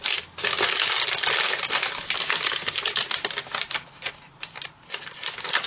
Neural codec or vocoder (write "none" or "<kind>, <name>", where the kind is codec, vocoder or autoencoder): none